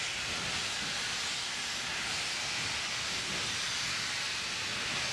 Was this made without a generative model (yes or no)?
yes